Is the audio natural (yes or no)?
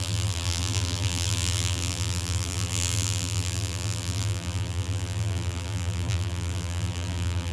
no